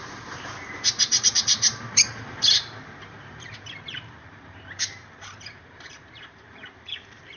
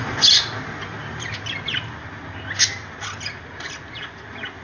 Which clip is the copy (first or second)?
first